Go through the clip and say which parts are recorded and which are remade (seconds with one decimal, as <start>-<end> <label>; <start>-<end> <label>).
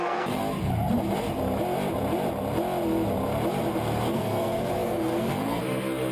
0.0-0.4 remade; 0.4-4.1 recorded; 4.1-6.1 remade